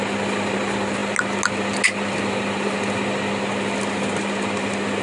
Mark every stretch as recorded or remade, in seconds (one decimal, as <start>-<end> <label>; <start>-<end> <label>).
0.0-5.0 recorded